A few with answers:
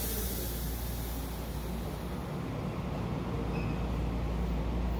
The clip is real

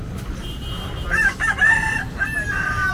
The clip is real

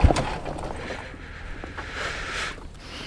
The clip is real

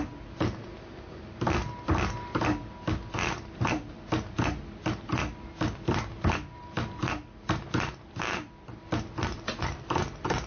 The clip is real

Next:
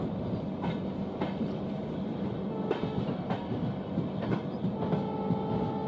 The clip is real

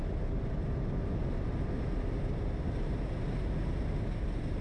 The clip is real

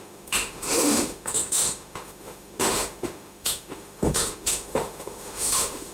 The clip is fake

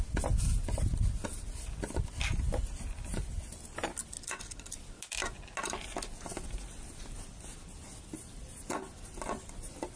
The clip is real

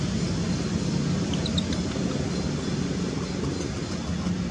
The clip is real